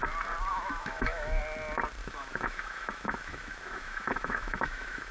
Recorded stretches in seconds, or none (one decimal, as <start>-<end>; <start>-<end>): 0.0-0.5; 1.4-2.0